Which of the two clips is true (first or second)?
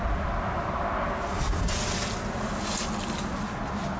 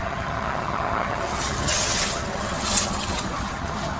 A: first